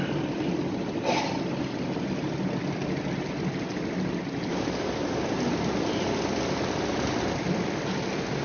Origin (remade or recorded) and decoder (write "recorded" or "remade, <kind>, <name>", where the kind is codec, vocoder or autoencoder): recorded